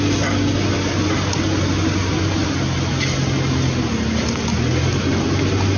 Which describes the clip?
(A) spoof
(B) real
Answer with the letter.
B